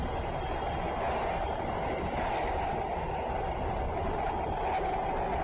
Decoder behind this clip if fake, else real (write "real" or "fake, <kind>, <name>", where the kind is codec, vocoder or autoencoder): real